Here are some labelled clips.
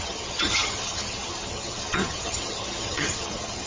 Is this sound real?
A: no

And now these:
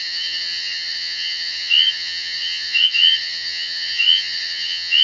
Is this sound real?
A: no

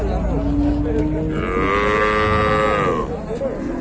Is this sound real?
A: yes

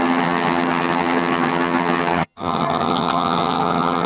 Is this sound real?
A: no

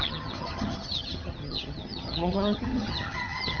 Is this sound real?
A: no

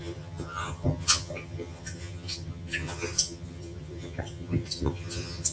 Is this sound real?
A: no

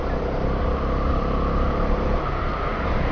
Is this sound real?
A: yes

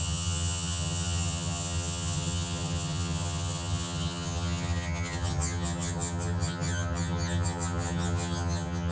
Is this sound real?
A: no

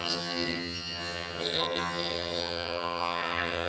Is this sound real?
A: no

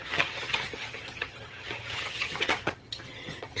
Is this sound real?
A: no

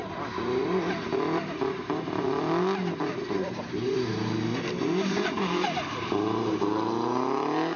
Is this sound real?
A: yes